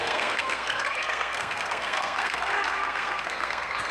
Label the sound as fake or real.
fake